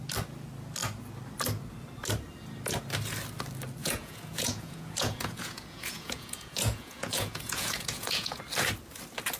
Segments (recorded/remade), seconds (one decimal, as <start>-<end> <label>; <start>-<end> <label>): 0.0-3.8 recorded; 3.8-8.4 remade; 8.4-9.4 recorded